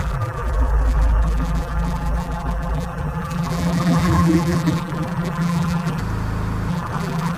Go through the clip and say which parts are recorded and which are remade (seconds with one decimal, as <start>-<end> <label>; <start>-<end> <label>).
0.0-6.0 remade; 6.0-6.7 recorded; 6.7-7.4 remade